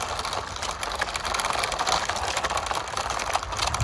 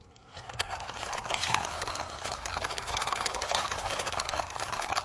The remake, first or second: second